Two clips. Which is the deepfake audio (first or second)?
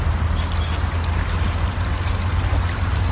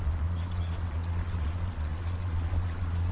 second